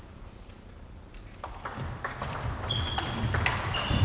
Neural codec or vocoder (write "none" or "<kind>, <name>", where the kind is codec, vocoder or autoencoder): none